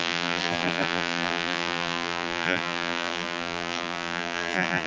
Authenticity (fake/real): fake